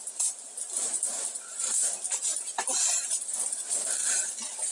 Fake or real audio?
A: real